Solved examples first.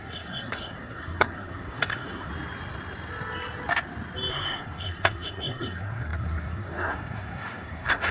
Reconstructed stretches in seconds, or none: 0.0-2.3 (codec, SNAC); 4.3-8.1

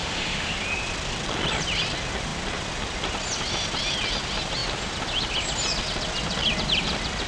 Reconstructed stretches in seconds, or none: 0.0-0.5 (autoencoder, DAC-VAE)